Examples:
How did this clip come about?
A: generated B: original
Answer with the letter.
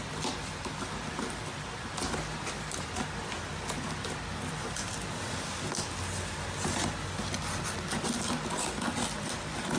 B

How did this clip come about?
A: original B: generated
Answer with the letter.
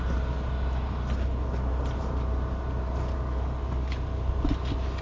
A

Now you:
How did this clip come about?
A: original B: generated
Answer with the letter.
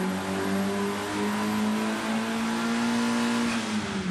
A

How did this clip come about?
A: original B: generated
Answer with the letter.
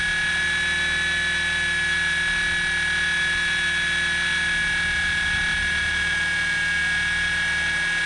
A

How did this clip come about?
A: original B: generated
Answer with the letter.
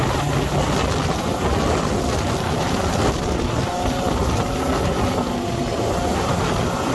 A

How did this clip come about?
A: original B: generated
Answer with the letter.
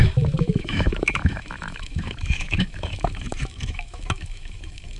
B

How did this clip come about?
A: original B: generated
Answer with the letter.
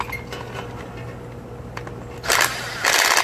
A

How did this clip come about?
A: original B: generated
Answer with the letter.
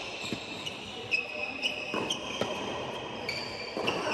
B